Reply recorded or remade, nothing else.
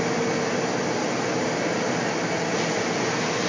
recorded